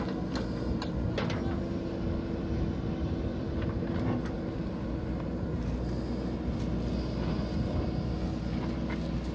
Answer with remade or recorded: recorded